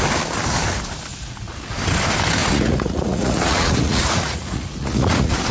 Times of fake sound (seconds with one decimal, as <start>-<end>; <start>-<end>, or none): 1.1-1.8; 2.4-5.5